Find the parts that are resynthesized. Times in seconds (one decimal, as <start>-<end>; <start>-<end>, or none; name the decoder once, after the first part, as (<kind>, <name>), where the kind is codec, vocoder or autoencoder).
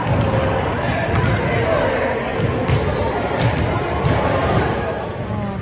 none